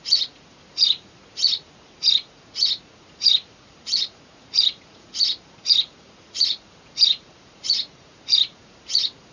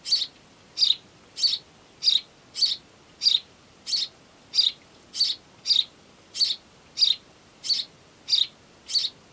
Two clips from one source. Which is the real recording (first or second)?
second